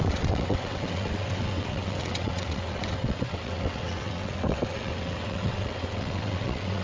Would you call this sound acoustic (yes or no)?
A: no